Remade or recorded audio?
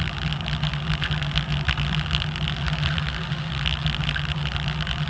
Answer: recorded